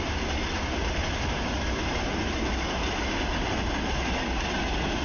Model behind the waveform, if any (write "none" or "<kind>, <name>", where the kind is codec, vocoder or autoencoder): none